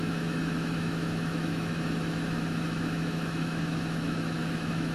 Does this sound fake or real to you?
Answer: fake